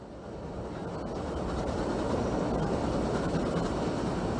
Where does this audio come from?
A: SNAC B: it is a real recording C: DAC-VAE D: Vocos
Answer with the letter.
B